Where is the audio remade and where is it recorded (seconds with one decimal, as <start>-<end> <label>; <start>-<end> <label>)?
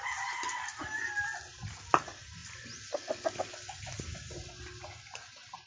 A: 0.0-5.7 recorded